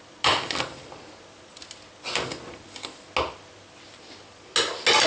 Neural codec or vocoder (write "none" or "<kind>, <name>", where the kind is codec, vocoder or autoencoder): none